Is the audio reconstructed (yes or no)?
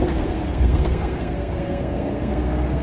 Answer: yes